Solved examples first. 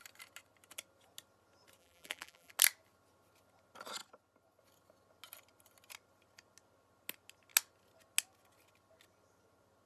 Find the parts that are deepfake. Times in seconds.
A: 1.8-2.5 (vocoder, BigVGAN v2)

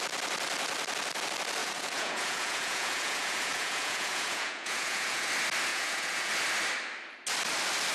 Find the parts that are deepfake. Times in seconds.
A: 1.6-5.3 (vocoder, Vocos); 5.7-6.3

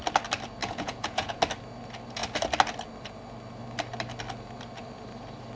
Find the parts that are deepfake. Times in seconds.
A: 0.6-1.4 (vocoder, Vocos)